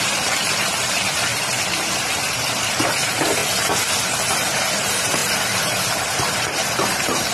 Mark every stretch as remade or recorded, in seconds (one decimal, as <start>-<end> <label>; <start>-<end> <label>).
0.0-3.4 remade; 3.4-4.0 recorded; 4.0-7.3 remade

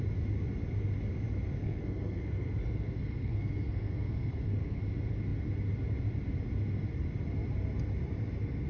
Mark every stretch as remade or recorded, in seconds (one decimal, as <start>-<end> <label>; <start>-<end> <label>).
0.0-1.6 recorded; 1.6-4.8 remade; 4.8-8.7 recorded

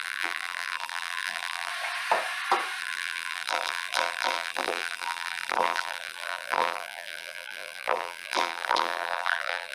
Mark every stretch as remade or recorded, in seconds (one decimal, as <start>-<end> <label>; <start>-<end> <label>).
0.0-1.7 remade; 1.7-2.8 recorded; 2.8-9.7 remade